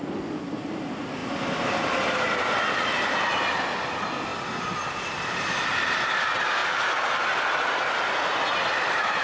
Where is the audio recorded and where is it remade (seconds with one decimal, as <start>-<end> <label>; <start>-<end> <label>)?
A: 0.0-9.2 recorded